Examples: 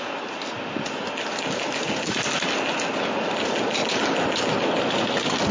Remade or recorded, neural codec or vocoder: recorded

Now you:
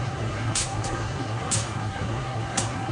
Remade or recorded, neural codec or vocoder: remade, codec, SNAC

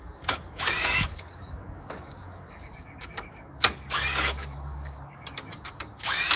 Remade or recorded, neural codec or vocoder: remade, codec, DAC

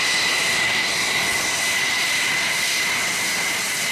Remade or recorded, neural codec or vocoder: recorded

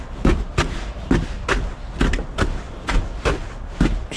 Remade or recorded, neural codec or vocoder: recorded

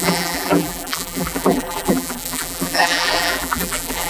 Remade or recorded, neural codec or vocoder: remade, vocoder, BigVGAN v2